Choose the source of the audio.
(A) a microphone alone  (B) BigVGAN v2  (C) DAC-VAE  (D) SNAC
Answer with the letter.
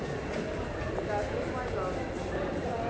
A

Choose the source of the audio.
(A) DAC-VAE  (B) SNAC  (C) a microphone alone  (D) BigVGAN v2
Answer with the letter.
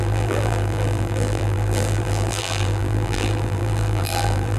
D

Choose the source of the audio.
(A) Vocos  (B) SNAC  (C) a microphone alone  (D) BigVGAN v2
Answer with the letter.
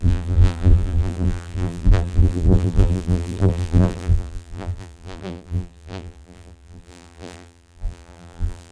D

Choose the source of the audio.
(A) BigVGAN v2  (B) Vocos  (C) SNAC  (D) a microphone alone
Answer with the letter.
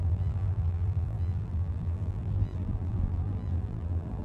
A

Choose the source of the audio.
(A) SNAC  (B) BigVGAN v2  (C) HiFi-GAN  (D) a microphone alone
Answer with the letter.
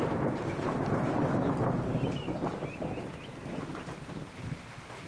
B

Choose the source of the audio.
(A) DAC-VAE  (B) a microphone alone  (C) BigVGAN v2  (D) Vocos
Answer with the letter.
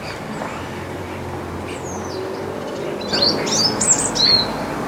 B